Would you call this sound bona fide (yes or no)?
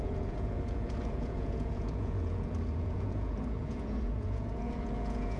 no